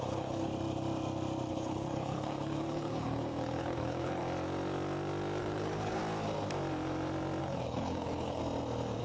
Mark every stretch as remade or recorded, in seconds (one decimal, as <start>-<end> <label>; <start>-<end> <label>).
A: 0.0-0.5 remade; 0.5-1.5 recorded; 1.5-4.2 remade; 4.2-5.4 recorded; 5.4-6.0 remade; 6.0-7.4 recorded; 7.4-8.4 remade; 8.4-9.0 recorded